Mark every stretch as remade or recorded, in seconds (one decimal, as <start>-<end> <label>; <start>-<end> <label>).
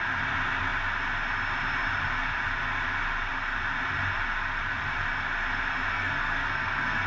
0.0-5.9 recorded; 5.9-7.1 remade